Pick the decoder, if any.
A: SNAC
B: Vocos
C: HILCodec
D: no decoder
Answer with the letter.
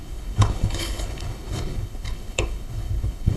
C